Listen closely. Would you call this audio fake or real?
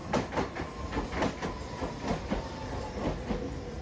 real